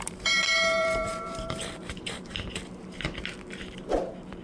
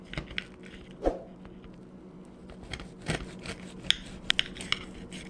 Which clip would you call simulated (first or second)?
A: first